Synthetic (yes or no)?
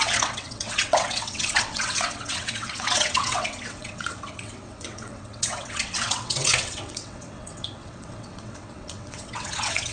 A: yes